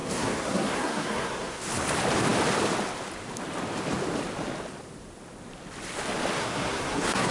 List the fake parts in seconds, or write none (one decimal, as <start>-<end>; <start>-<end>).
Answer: 0.0-1.6; 6.4-7.3